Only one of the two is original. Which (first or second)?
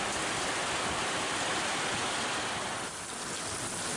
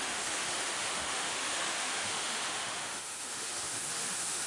first